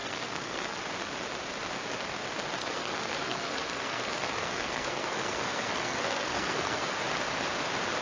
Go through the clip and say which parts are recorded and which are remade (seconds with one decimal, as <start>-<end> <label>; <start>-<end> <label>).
0.0-0.8 remade; 0.8-2.6 recorded; 2.6-7.0 remade; 7.0-8.0 recorded